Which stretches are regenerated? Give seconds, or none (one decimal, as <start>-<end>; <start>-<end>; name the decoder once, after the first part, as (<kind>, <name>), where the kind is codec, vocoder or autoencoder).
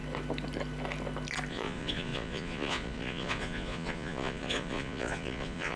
1.5-5.8 (vocoder, Vocos)